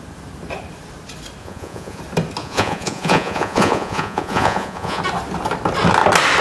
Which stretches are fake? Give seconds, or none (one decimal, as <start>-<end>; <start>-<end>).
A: 1.4-2.0; 2.4-5.0